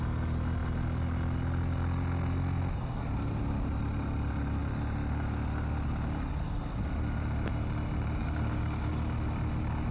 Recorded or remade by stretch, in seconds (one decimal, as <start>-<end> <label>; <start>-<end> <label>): 0.0-8.2 recorded; 8.2-8.9 remade; 8.9-9.9 recorded